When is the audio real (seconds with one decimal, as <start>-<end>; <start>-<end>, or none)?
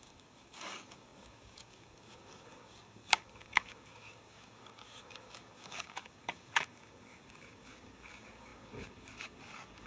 none